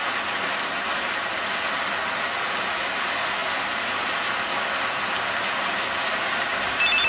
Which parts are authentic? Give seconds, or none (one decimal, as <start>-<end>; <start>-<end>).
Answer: 0.0-7.1